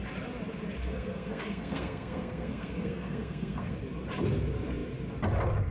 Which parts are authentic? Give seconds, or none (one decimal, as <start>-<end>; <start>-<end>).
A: 0.0-0.8; 3.7-5.7